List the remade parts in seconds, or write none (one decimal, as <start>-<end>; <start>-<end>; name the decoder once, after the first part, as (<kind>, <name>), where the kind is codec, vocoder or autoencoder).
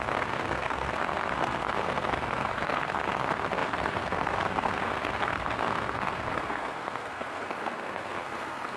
0.0-8.8 (codec, SNAC)